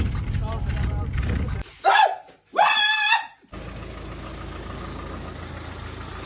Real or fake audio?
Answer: real